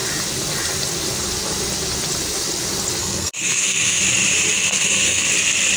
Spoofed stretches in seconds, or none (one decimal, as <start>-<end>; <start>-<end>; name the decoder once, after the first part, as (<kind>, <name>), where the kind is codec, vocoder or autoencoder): 3.0-4.0 (codec, SNAC); 4.5-5.3